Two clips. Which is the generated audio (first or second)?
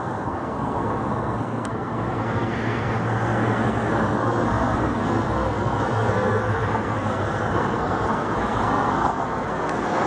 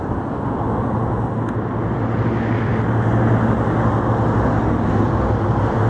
first